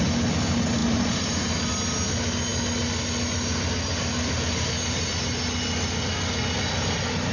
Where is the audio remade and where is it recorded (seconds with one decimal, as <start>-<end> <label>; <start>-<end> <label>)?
0.0-0.8 recorded; 0.8-1.7 remade; 1.7-7.3 recorded